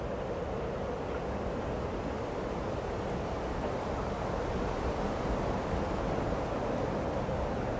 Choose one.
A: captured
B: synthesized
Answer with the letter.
A